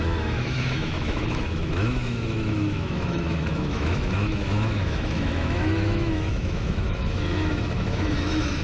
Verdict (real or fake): fake